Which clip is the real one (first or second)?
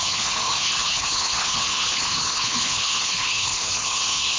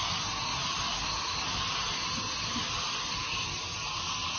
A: second